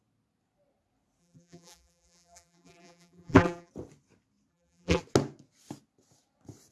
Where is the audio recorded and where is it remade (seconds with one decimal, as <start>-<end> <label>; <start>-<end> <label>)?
0.0-1.2 recorded; 1.2-3.7 remade; 3.7-4.5 recorded; 4.5-5.0 remade; 5.0-6.7 recorded